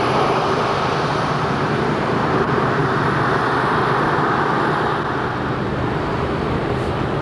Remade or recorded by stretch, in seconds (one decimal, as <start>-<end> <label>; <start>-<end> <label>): 0.0-2.8 remade; 2.8-5.5 recorded; 5.5-7.2 remade